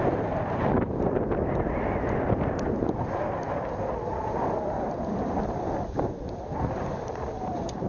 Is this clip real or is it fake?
real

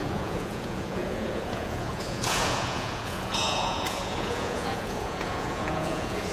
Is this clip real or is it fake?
fake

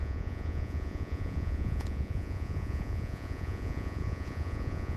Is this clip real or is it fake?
fake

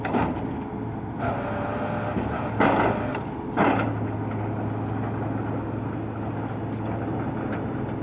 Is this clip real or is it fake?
real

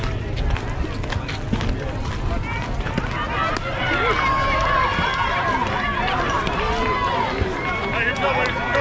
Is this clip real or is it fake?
real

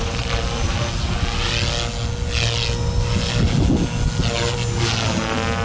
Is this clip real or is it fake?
real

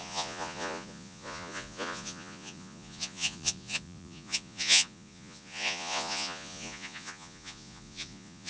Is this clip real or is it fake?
fake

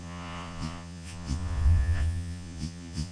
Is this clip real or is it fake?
fake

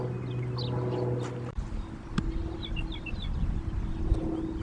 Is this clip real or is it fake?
real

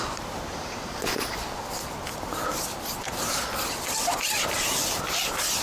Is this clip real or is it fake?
real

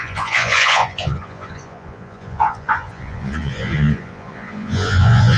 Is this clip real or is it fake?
fake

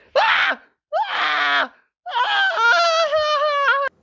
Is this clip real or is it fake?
real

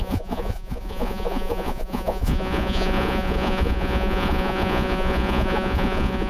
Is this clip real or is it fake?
fake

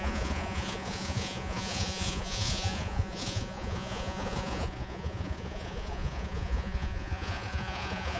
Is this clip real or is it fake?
fake